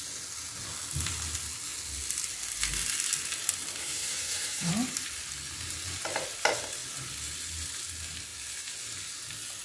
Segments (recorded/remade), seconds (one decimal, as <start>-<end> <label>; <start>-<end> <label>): 0.0-3.8 recorded; 3.8-4.7 remade; 4.7-9.6 recorded